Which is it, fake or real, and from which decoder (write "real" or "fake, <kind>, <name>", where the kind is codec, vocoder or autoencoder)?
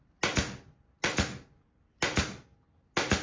real